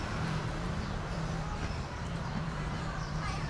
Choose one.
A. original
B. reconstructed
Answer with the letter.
B